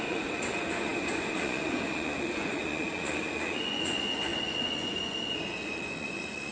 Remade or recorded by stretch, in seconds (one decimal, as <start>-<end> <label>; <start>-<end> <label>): 0.0-6.5 remade